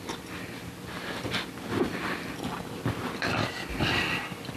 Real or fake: real